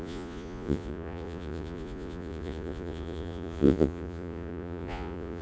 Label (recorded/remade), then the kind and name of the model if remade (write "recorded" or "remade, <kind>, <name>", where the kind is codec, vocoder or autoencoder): remade, vocoder, Vocos